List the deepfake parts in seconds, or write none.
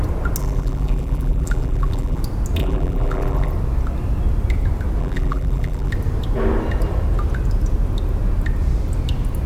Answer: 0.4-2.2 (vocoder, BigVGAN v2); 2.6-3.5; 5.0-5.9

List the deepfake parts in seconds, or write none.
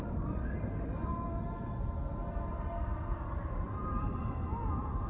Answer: 0.0-1.1 (vocoder, BigVGAN v2); 4.2-5.1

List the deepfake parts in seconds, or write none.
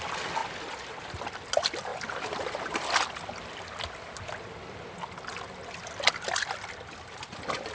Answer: 0.4-1.0 (vocoder, BigVGAN v2)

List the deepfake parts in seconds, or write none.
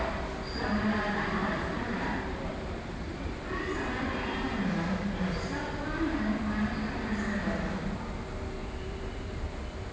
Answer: 1.4-2.5 (vocoder, BigVGAN v2); 8.6-9.4